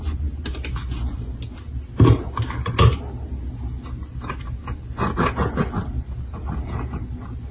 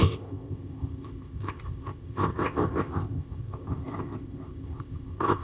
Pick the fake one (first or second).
second